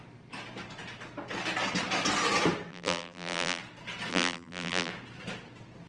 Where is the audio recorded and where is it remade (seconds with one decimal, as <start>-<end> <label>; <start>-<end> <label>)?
0.0-2.7 recorded; 2.7-3.6 remade; 3.6-4.1 recorded; 4.1-4.9 remade; 4.9-5.9 recorded